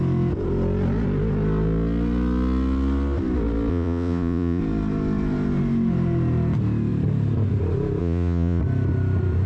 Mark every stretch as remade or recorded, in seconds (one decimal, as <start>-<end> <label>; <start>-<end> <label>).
0.0-3.7 recorded; 3.7-4.6 remade; 4.6-8.0 recorded; 8.0-8.6 remade; 8.6-9.5 recorded